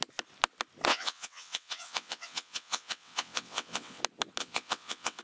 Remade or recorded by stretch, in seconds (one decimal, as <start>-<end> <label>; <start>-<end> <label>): 0.0-0.9 recorded; 0.9-4.0 remade; 4.0-4.4 recorded; 4.4-5.2 remade

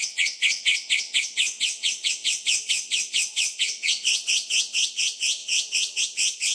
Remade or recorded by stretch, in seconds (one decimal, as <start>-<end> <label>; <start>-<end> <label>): 0.0-6.5 remade

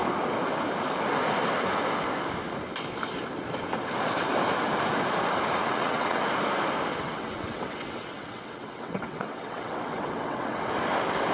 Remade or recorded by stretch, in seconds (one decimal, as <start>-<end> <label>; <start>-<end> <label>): 0.0-5.6 recorded; 5.6-6.2 remade; 6.2-6.9 recorded; 6.9-10.7 remade; 10.7-11.3 recorded

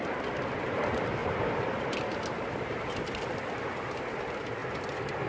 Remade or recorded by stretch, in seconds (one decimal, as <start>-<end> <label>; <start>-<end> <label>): 0.0-5.3 recorded

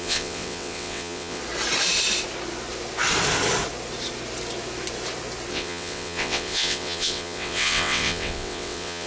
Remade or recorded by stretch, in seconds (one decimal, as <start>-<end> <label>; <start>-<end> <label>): 0.0-1.4 remade; 1.4-5.5 recorded; 5.5-9.1 remade

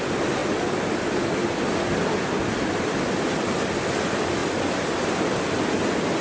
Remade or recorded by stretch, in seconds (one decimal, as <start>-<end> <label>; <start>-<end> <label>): 0.0-6.2 recorded

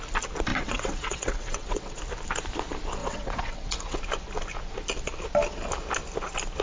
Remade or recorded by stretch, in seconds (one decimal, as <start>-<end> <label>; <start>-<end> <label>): 0.0-0.5 recorded; 0.5-2.0 remade; 2.0-3.0 recorded; 3.0-4.0 remade; 4.0-6.6 recorded

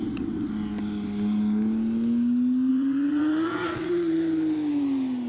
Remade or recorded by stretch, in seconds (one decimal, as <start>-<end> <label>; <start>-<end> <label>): 0.0-2.7 recorded; 2.7-4.2 remade; 4.2-5.3 recorded